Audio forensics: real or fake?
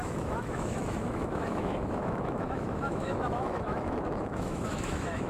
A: fake